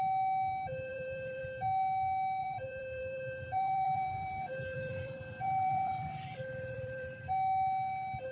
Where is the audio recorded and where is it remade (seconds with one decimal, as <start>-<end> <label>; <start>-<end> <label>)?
0.0-0.9 recorded; 0.9-1.4 remade; 1.4-2.4 recorded; 2.4-7.3 remade; 7.3-8.3 recorded